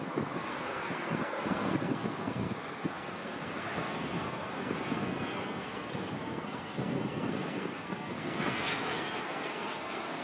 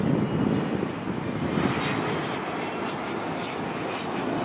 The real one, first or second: second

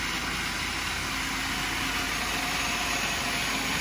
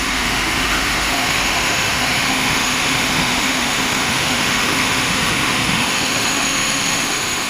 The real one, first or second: first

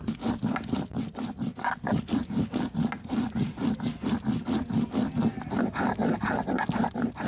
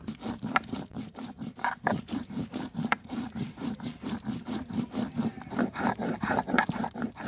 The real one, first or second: first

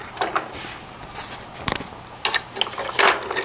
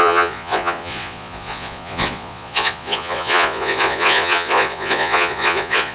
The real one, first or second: first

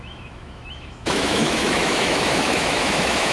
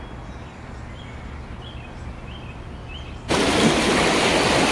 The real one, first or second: second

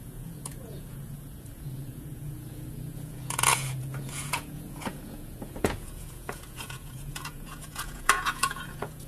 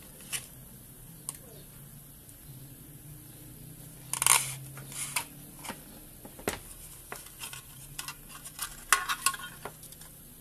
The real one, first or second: second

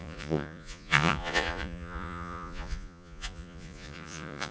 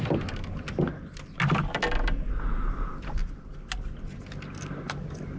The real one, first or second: second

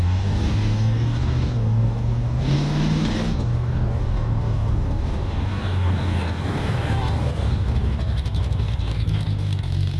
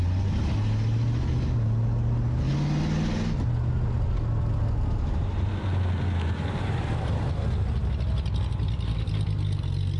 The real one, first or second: second